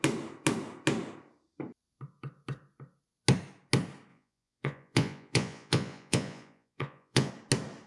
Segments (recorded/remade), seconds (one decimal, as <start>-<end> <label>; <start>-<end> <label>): 0.0-4.1 recorded; 4.1-7.3 remade; 7.3-7.9 recorded